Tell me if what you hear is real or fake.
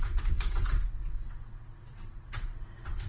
fake